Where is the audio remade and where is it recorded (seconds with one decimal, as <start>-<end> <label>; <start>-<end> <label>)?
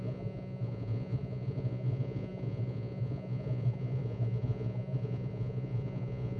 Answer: 0.0-6.4 remade